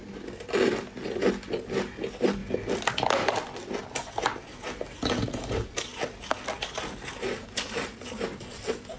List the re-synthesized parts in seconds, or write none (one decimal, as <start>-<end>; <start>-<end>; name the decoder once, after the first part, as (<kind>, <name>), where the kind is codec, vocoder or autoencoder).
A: 5.9-9.0 (vocoder, BigVGAN v2)